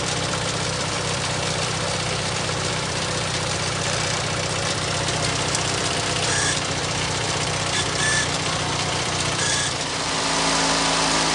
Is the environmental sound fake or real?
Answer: fake